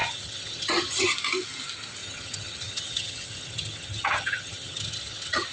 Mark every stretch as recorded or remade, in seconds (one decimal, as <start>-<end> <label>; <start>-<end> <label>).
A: 0.0-1.1 remade; 1.1-2.0 recorded; 2.0-5.5 remade